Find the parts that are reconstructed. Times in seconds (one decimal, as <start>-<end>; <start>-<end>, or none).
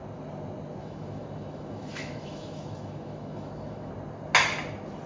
0.8-3.9